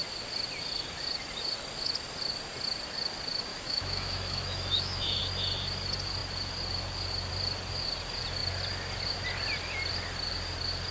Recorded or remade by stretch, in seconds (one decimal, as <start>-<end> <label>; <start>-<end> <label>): 0.0-3.5 recorded; 3.5-5.2 remade; 5.2-10.9 recorded